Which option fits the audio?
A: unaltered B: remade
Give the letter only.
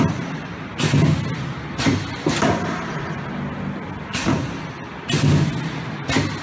A